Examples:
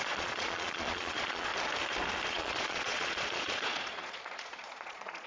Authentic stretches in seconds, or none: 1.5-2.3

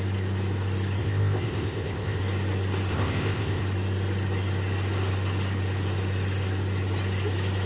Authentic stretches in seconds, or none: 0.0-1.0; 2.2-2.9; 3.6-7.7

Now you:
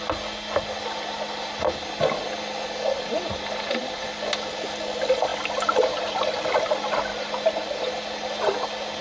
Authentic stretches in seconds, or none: 0.0-3.3; 3.8-9.0

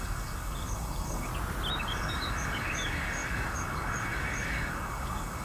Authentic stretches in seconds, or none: 1.3-1.8

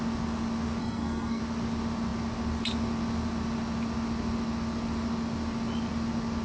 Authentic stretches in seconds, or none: 0.0-0.8; 1.4-6.4

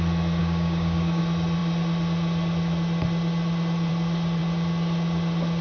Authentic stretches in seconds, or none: 0.0-0.4; 1.2-5.6

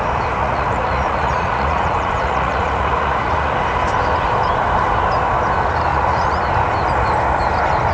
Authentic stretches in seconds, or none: 0.0-0.4; 3.5-5.9; 6.4-7.9

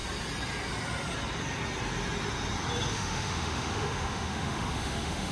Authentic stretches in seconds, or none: 0.0-2.9